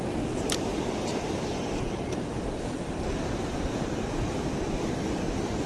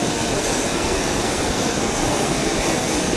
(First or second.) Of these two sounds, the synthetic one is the second